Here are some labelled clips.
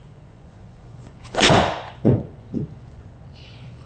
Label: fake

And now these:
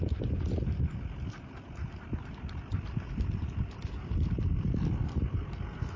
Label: real